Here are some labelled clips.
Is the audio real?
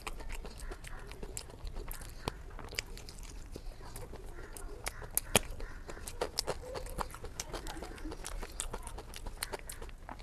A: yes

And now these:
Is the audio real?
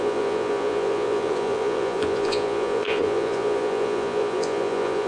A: no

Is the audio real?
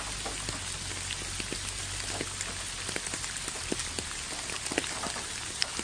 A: yes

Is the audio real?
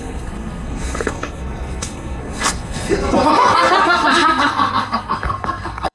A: no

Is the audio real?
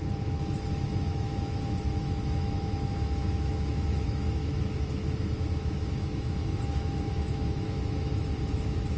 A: no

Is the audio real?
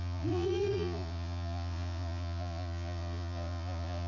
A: no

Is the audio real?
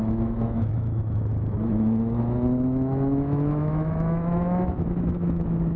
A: no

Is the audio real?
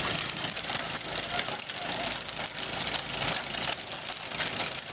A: yes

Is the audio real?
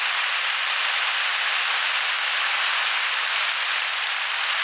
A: yes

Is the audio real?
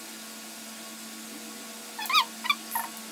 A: yes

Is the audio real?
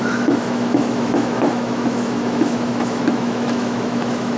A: no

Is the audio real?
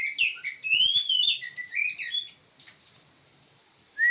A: yes